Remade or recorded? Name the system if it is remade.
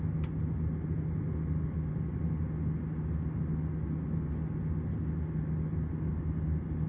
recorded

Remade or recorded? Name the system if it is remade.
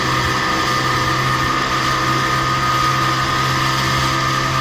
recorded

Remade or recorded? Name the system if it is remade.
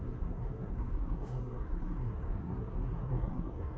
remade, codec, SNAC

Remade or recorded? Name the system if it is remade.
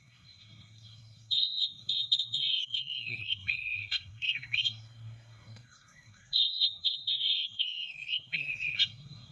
remade, codec, SNAC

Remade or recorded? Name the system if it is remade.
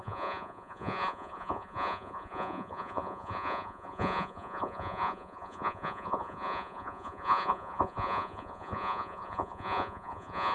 remade, vocoder, Vocos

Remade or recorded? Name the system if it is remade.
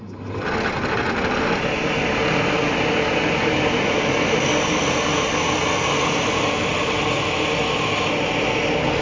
recorded